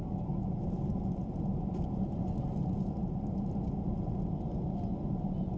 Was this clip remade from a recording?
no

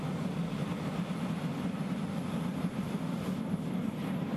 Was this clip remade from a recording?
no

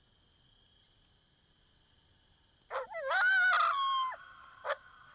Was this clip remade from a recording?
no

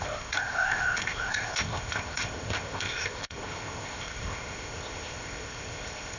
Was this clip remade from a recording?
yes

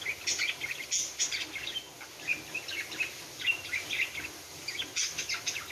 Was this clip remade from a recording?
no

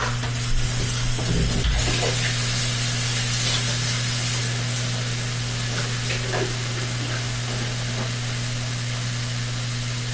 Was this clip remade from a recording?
no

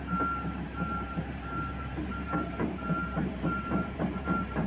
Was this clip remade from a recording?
yes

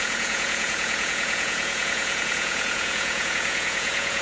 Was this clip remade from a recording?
yes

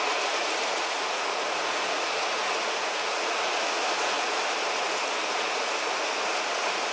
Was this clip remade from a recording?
yes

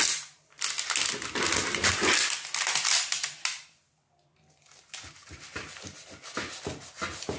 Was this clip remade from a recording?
no